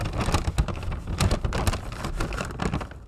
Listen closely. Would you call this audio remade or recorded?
recorded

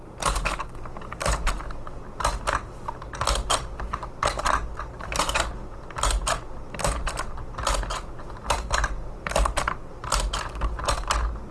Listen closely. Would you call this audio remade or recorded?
recorded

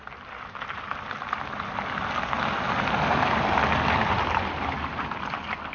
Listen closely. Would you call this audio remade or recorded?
recorded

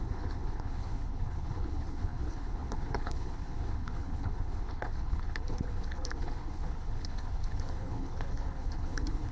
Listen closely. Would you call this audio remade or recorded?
remade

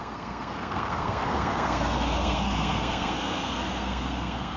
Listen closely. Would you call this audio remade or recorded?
remade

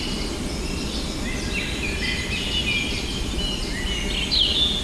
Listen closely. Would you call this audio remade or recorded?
recorded